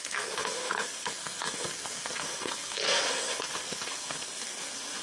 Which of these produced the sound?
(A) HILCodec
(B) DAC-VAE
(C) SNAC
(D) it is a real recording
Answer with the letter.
C